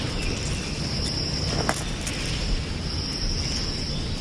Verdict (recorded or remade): recorded